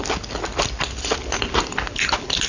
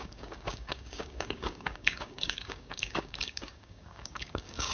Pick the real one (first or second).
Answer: first